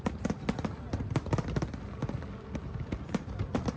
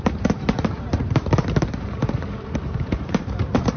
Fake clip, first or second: second